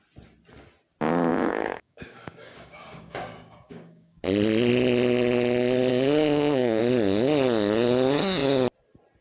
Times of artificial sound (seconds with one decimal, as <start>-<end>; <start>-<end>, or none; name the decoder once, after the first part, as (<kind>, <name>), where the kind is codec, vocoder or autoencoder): 1.3-4.2 (codec, DAC); 5.9-6.8